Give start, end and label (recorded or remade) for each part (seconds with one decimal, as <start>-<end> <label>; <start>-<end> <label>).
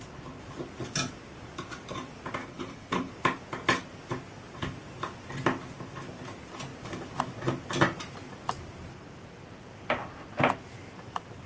0.0-2.4 recorded; 2.4-3.1 remade; 3.1-11.5 recorded